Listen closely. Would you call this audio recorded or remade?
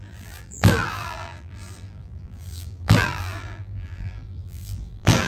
remade